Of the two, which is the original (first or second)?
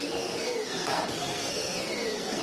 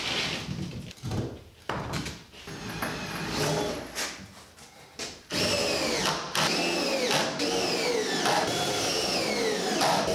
second